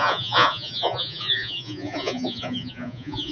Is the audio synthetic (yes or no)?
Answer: yes